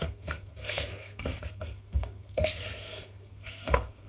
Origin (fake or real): fake